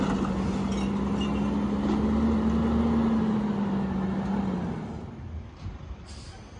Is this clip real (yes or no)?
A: yes